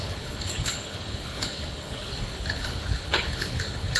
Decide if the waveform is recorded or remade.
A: remade